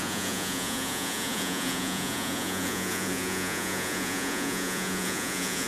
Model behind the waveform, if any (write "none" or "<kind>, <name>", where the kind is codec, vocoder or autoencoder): vocoder, Vocos